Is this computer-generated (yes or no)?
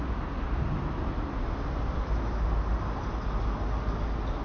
no